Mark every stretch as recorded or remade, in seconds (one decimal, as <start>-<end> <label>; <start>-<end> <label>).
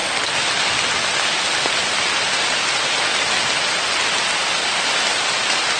0.0-5.8 recorded